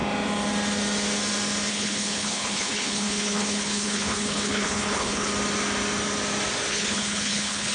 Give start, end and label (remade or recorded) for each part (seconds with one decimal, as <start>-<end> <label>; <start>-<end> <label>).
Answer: 0.0-1.7 recorded; 1.7-5.3 remade; 5.3-6.7 recorded; 6.7-7.7 remade